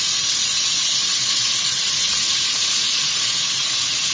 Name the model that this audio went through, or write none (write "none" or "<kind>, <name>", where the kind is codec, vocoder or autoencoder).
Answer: vocoder, Vocos